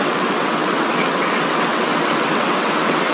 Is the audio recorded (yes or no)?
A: no